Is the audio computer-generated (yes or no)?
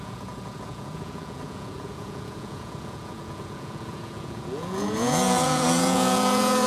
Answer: yes